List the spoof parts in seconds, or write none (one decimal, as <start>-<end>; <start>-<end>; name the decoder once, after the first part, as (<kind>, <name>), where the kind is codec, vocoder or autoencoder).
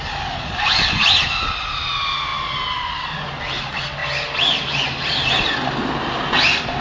none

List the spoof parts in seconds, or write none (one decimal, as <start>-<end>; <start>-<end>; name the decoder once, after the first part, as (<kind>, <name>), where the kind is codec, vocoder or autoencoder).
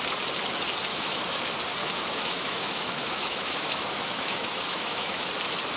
0.9-1.4 (autoencoder, DAC-VAE); 1.8-5.3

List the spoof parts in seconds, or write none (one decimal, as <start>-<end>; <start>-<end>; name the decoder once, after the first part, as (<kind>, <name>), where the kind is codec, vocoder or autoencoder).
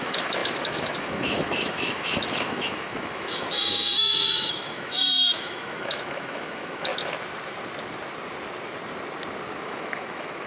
0.0-6.9 (autoencoder, DAC-VAE); 9.6-10.5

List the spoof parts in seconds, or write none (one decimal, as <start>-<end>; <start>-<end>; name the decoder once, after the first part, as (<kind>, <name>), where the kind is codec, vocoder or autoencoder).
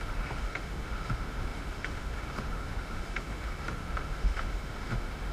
0.0-5.3 (autoencoder, DAC-VAE)